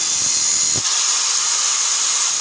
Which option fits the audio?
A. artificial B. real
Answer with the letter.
B